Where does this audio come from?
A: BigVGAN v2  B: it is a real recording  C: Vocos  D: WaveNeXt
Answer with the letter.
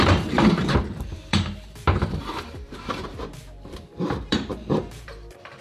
A